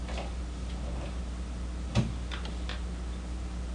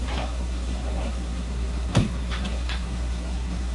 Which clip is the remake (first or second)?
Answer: second